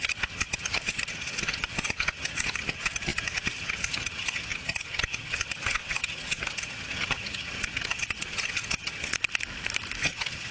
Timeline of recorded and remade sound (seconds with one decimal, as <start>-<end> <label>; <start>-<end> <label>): 0.0-9.1 remade; 9.1-10.0 recorded; 10.0-10.5 remade